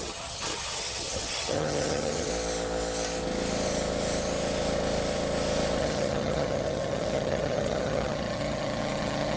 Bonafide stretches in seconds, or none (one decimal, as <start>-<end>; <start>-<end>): 2.3-5.8